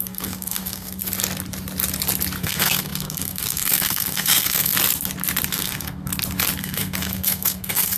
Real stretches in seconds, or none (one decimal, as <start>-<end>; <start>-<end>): 1.0-2.4; 4.7-5.5; 6.1-6.6